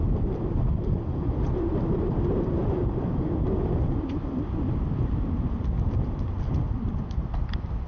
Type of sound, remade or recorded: recorded